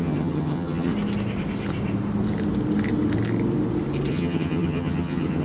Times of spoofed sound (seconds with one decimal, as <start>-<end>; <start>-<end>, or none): 0.0-0.9; 4.1-5.4